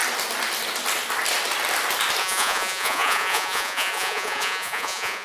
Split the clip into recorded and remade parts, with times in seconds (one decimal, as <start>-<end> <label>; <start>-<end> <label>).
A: 0.0-2.2 recorded; 2.2-5.2 remade